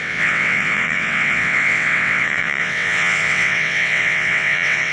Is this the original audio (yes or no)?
no